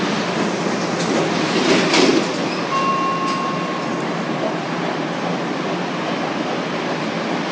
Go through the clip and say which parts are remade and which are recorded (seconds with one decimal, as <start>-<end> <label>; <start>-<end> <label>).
0.0-7.5 recorded

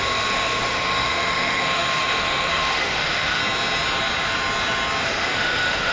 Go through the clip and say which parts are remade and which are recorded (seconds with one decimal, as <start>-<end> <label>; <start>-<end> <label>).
0.0-3.4 remade; 3.4-5.0 recorded; 5.0-5.9 remade

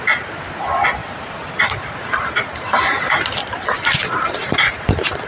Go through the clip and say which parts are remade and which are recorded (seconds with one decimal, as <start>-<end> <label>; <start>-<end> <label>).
0.0-1.0 recorded; 1.0-4.0 remade; 4.0-5.3 recorded